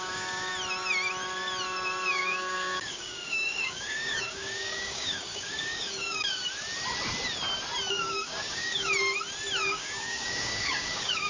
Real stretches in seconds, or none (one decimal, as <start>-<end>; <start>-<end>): 0.5-2.1; 6.4-7.9; 8.9-9.6